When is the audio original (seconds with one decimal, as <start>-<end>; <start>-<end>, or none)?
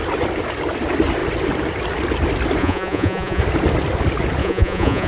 0.0-2.6; 3.4-4.4